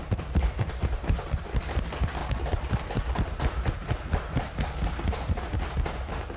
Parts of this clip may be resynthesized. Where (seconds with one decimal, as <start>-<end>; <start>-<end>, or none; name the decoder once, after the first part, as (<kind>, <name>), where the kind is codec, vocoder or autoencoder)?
none

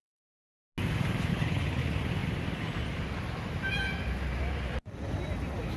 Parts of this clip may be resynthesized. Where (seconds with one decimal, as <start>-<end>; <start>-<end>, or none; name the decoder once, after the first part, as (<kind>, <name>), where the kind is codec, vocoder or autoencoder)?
1.3-1.8 (codec, HILCodec)

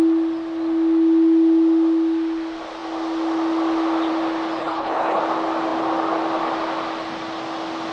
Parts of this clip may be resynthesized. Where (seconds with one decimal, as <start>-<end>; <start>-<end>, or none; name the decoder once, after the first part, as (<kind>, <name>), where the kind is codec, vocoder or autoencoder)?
4.6-5.2 (codec, HILCodec)

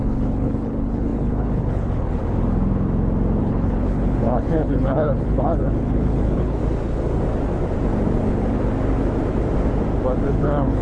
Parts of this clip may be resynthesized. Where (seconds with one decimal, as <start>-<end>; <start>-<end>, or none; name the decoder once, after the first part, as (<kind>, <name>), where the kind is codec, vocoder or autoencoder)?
0.0-2.2 (codec, HILCodec); 3.4-6.6; 10.3-10.8